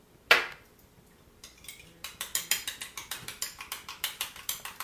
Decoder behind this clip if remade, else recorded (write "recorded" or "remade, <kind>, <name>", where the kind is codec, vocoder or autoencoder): recorded